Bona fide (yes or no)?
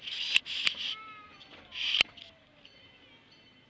yes